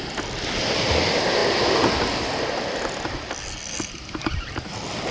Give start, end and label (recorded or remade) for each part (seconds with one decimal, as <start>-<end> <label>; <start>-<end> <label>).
0.0-5.1 recorded